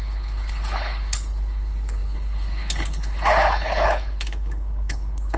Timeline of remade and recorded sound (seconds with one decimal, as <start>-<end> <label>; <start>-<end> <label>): 0.0-5.4 remade